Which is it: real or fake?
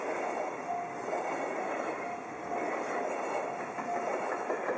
real